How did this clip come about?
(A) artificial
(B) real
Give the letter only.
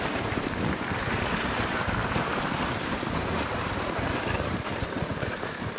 A